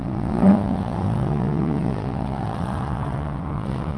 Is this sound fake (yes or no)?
yes